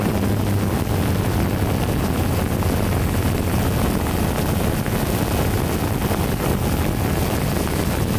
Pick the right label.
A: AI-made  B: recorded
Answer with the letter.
B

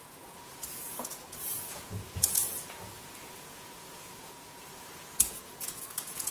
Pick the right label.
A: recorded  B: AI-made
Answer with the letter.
B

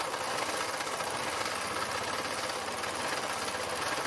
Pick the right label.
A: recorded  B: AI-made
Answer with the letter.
A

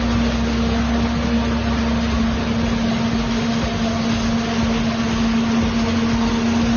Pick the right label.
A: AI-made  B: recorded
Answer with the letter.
B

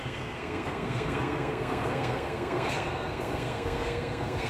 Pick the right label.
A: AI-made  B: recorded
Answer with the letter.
A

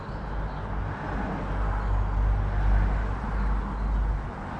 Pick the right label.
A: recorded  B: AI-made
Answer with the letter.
A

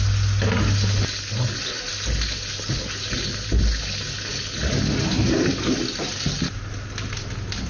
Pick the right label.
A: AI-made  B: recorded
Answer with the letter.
B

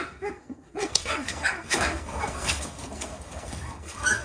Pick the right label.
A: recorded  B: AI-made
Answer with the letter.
B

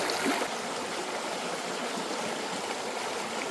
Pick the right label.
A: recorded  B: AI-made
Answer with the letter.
A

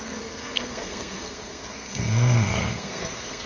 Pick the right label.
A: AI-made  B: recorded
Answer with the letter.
A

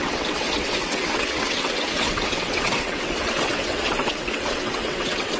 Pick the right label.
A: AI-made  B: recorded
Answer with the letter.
A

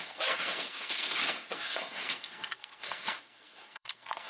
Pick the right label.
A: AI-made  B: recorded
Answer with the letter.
A